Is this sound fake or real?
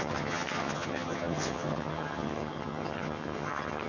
fake